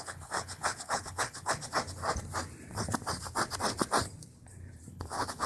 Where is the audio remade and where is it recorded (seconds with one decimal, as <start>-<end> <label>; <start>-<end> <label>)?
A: 0.0-1.6 remade; 1.6-4.9 recorded; 4.9-5.5 remade